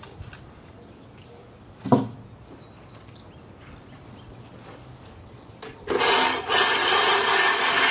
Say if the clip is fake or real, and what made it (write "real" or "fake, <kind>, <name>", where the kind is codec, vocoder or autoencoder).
real